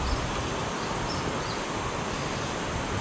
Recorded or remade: recorded